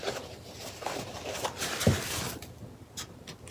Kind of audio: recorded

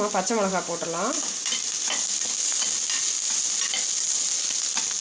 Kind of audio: recorded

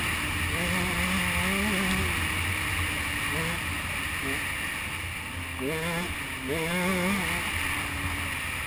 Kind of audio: recorded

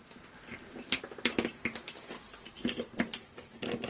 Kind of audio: recorded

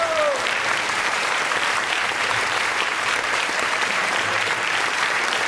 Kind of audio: remade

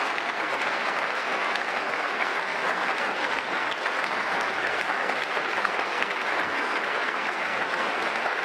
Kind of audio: remade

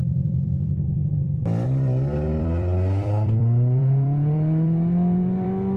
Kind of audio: remade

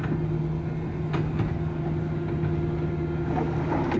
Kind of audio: recorded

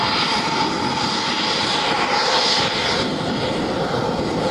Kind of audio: recorded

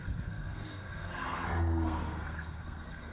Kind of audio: remade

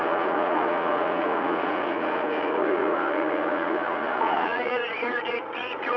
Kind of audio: remade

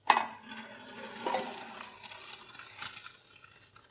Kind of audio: recorded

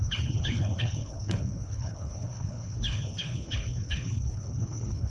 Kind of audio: remade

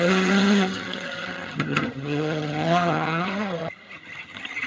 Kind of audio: remade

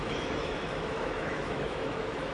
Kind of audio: remade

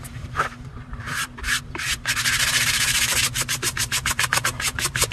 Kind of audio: remade